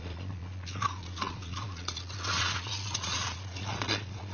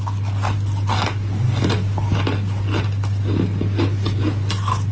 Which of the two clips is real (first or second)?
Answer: second